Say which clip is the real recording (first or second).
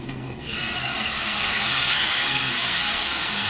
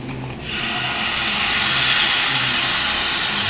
second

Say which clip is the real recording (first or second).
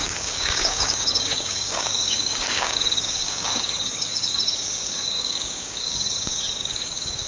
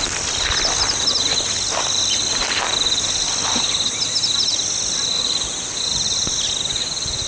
second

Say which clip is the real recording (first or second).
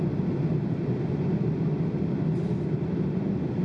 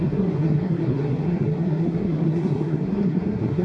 first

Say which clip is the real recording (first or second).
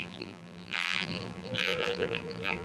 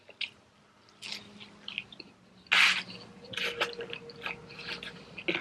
second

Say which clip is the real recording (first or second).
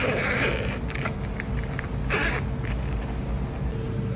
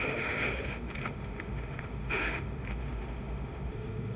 first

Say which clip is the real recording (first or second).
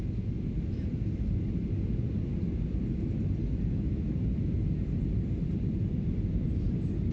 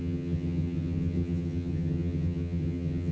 first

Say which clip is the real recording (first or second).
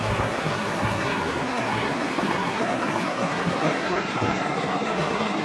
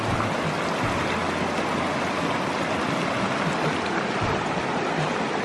second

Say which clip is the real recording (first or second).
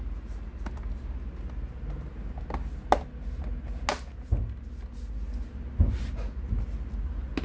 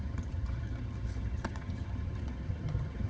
first